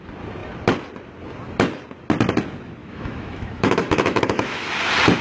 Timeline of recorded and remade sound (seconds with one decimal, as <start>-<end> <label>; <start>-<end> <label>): 0.0-2.8 recorded; 2.8-4.7 remade; 4.7-5.2 recorded